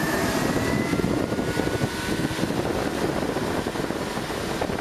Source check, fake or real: real